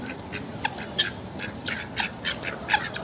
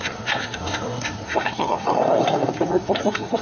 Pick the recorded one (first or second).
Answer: first